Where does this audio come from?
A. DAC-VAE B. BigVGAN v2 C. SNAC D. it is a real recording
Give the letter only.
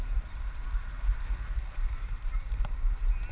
D